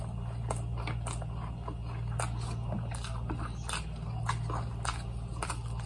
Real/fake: real